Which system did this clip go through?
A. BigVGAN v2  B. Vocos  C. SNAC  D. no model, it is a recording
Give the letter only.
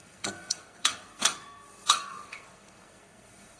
C